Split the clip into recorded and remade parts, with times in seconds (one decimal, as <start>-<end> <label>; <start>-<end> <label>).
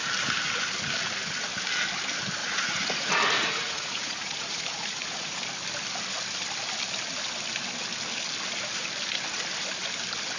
0.0-2.4 recorded; 2.4-5.4 remade; 5.4-10.4 recorded